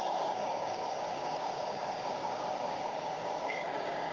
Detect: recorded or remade remade